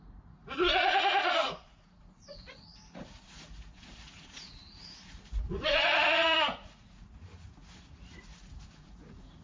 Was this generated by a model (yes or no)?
yes